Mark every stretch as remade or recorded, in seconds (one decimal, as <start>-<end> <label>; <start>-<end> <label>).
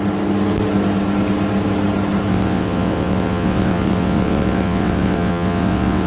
0.0-2.3 recorded; 2.3-6.1 remade